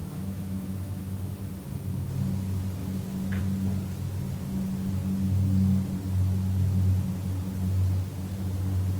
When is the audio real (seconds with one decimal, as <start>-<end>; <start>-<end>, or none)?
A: 1.0-9.0